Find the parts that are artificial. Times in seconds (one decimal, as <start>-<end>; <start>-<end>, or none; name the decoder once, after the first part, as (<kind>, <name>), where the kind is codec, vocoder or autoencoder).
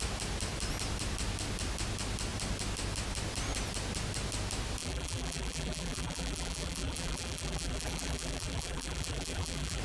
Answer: 4.8-9.8 (vocoder, BigVGAN v2)